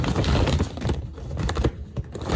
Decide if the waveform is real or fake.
real